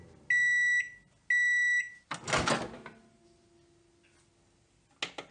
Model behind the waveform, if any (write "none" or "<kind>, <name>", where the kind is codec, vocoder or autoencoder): none